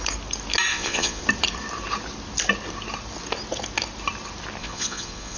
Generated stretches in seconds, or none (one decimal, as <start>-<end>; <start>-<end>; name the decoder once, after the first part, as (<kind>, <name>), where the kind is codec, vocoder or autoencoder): 0.7-1.2 (vocoder, Vocos); 4.6-5.4